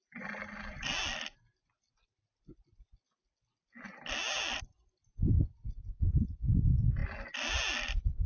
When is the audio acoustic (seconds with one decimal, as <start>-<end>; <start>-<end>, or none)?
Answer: 0.0-8.3